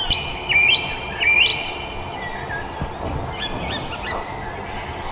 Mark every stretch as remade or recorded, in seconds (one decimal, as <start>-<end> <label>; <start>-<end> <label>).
0.0-5.1 recorded